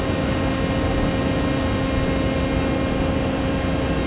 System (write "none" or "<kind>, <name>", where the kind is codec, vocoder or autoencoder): none